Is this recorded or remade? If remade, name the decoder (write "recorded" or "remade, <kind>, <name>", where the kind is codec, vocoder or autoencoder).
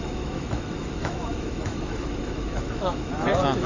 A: remade, autoencoder, DAC-VAE